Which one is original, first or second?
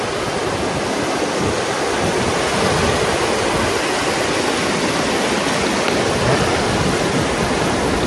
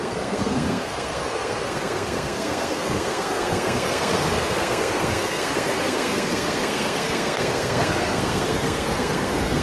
first